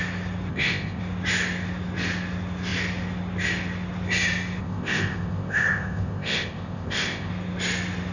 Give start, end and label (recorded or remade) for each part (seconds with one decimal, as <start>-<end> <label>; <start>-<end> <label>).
0.0-0.5 recorded; 0.5-1.0 remade; 1.0-4.6 recorded; 4.6-7.3 remade; 7.3-8.1 recorded